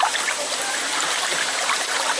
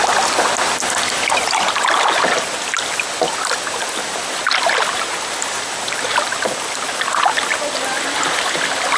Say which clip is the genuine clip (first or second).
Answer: second